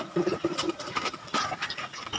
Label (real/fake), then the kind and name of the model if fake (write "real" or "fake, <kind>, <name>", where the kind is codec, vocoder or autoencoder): fake, vocoder, Vocos